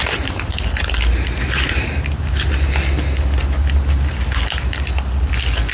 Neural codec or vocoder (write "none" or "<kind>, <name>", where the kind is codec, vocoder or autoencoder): none